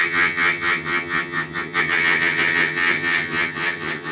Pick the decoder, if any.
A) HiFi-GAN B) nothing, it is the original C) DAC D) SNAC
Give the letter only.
A